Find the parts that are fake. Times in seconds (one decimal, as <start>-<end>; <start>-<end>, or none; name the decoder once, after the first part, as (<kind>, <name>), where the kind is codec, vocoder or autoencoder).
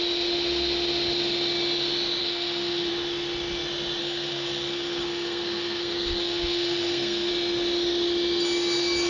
2.2-2.9 (codec, SNAC); 4.0-7.3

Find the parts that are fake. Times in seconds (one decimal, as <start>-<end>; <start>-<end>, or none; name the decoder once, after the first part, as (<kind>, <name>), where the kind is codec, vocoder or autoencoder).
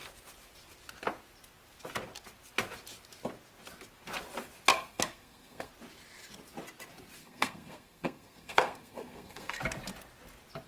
4.7-5.7 (codec, SNAC); 7.2-9.6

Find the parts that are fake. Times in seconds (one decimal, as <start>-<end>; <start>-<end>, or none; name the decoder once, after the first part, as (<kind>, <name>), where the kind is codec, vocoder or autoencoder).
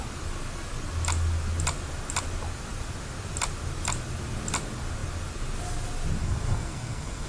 6.2-7.3 (codec, SNAC)